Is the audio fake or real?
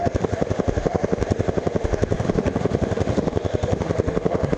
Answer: fake